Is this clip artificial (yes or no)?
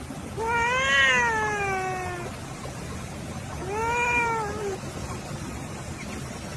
no